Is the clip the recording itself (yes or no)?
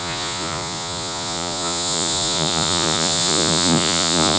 no